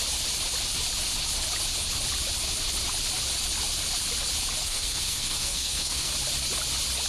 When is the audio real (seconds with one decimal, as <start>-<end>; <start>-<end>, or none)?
0.0-4.6; 6.1-7.1